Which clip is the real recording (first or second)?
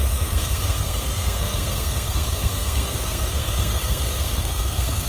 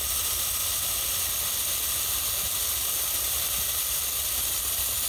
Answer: second